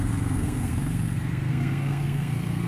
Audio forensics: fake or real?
fake